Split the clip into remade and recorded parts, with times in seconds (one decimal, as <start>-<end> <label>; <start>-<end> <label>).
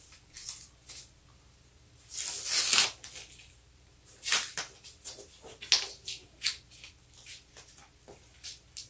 0.0-8.9 recorded